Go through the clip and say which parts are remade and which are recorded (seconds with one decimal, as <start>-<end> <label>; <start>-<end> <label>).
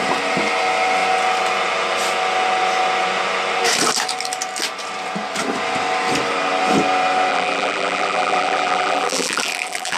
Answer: 0.0-7.3 recorded; 7.3-10.0 remade